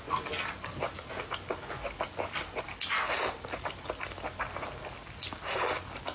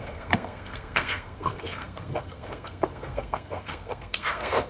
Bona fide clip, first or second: first